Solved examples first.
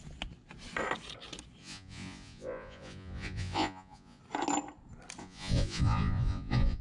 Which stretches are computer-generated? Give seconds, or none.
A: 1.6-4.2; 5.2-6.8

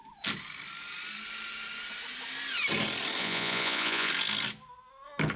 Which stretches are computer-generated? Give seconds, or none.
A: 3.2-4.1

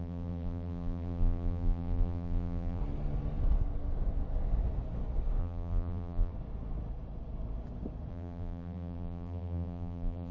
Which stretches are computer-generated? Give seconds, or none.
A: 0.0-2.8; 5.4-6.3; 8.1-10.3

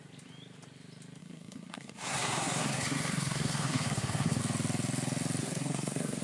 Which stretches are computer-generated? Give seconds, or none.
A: 1.2-4.4; 5.4-6.2

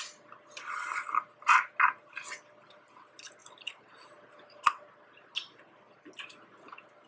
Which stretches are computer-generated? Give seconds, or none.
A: none

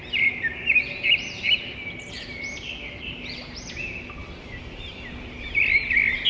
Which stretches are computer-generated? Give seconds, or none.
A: 4.2-5.1

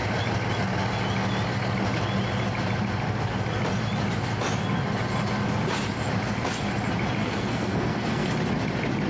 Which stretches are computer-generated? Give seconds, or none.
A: 7.2-8.3

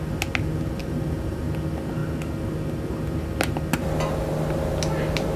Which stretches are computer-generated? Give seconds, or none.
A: 0.8-1.4